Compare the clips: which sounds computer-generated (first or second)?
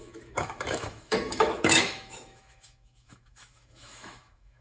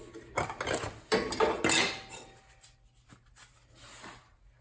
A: first